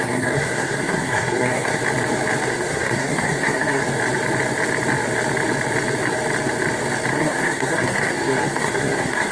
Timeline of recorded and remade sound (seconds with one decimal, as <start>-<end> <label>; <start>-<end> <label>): 0.0-1.8 remade; 1.8-2.5 recorded; 2.5-3.8 remade; 3.8-7.1 recorded; 7.1-9.3 remade